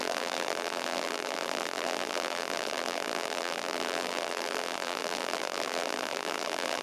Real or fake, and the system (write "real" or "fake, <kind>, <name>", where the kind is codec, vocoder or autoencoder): fake, vocoder, BigVGAN v2